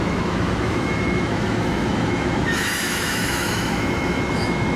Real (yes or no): no